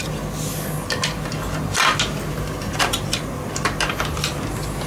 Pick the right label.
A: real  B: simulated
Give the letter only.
A